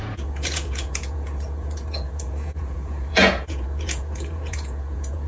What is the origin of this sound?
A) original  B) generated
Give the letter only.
B